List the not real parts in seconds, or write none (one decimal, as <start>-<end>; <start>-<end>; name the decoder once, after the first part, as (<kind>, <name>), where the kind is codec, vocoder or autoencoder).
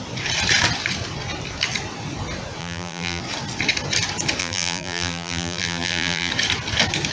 2.6-3.2 (vocoder, BigVGAN v2); 4.4-6.3